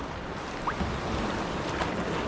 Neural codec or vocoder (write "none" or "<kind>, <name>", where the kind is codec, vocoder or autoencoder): none